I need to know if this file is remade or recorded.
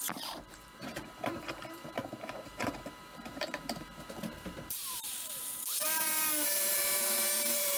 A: remade